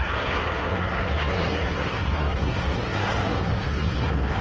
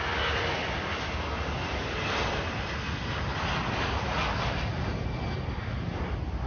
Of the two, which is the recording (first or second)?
second